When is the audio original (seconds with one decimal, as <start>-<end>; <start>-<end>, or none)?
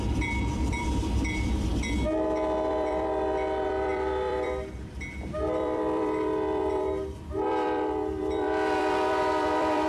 1.7-2.7